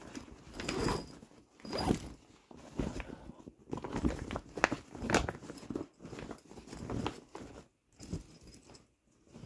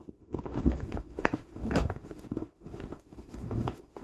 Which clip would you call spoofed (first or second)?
second